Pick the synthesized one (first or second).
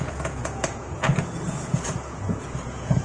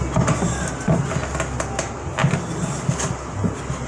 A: first